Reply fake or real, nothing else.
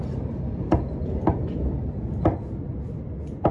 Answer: real